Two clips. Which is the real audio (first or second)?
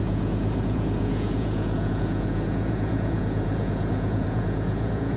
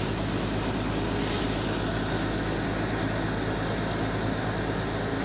second